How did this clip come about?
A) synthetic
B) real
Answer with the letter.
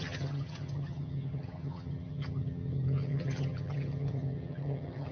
A